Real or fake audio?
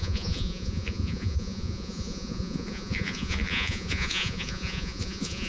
fake